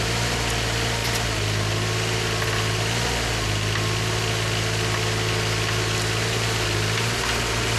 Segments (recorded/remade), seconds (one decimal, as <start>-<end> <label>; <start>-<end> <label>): 0.0-7.8 recorded